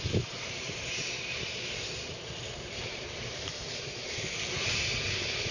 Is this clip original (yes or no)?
no